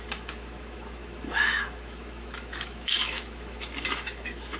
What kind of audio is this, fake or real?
fake